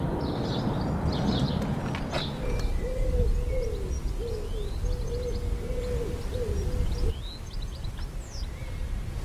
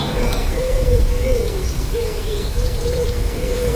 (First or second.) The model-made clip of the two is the second